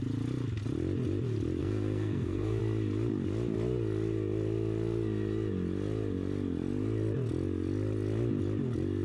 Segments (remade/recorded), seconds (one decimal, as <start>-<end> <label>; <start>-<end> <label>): 0.0-1.6 recorded; 1.6-2.6 remade; 2.6-9.0 recorded